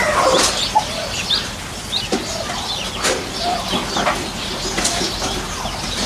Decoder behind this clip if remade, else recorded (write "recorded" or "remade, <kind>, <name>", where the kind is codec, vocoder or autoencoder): recorded